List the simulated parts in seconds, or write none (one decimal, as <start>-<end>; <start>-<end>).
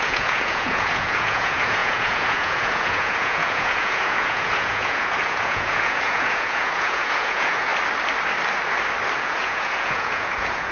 0.0-7.7; 9.2-10.7